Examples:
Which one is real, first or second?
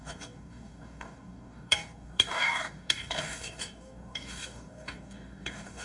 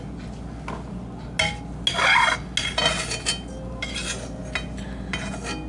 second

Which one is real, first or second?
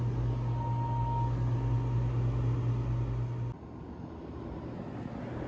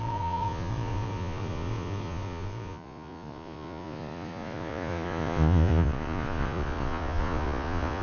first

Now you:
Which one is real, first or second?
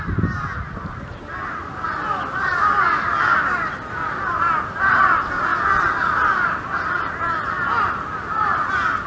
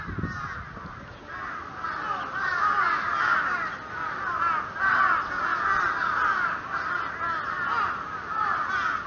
second